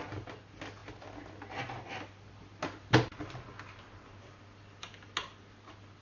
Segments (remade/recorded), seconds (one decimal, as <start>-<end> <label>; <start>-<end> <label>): 0.0-6.0 recorded